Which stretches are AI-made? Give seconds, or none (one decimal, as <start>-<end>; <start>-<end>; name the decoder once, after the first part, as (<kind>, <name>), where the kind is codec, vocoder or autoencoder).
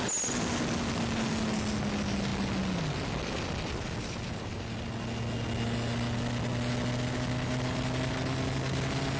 none